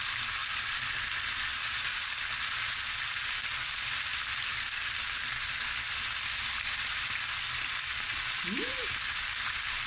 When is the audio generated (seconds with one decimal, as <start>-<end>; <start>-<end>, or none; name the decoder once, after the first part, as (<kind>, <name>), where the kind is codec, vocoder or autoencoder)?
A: 0.0-0.4 (vocoder, BigVGAN v2); 0.9-1.5; 3.8-9.9